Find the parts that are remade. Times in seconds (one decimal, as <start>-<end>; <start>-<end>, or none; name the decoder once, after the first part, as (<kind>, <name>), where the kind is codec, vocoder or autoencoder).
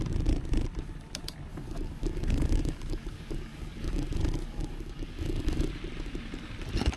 1.5-5.7 (codec, DAC)